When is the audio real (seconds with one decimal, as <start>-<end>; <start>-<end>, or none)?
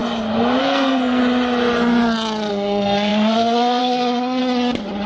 0.0-0.6; 1.2-2.5; 4.4-5.1